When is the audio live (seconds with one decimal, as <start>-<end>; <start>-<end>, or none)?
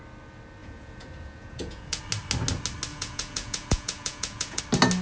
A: 0.0-0.6; 2.0-2.9; 4.6-5.0